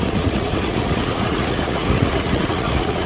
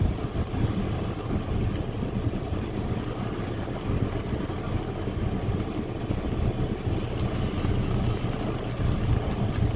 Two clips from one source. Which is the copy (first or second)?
first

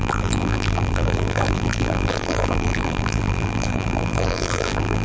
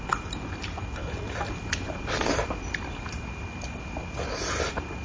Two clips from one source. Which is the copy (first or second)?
first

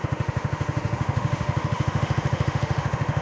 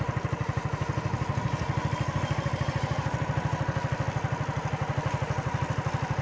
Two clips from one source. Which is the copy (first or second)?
first